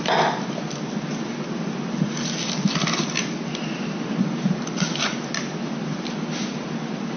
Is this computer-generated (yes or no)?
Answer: no